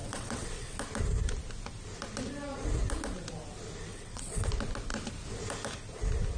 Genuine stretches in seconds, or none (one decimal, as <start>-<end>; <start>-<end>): 0.8-3.9; 4.5-6.4